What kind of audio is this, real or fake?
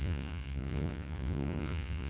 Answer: fake